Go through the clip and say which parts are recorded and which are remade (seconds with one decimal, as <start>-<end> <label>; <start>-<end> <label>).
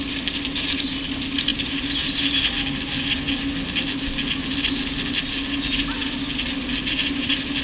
0.0-7.6 recorded